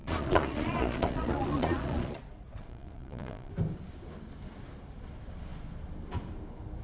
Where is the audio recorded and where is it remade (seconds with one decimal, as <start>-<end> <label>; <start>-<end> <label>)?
0.0-3.5 remade; 3.5-6.8 recorded